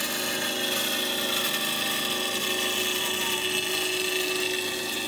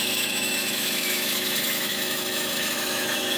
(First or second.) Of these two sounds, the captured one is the first